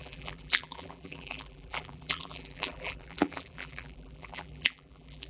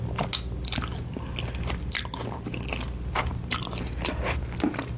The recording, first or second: second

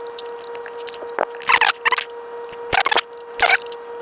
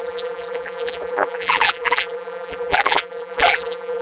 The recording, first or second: first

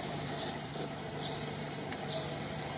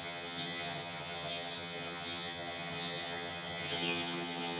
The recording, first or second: first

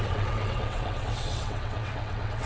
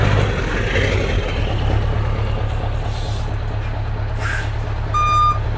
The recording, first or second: second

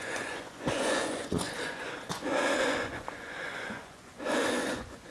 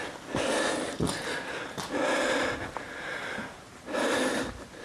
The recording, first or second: second